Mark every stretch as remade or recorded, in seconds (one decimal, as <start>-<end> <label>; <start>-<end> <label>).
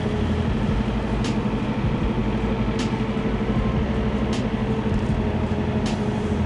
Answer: 0.0-6.5 recorded